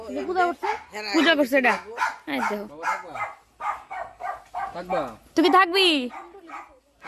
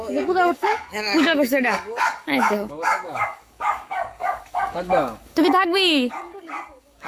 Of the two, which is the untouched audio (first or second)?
first